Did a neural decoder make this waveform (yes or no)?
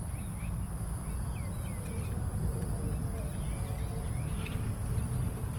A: no